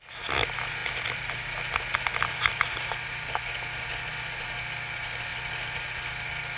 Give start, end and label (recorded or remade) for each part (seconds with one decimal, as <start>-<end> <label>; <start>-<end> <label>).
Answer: 0.0-6.6 recorded